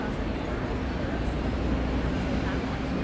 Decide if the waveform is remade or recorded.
recorded